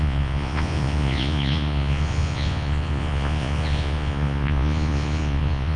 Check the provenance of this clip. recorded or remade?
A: remade